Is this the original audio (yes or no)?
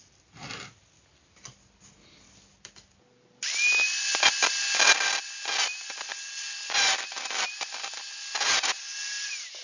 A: yes